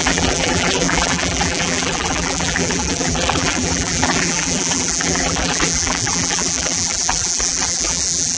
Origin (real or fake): fake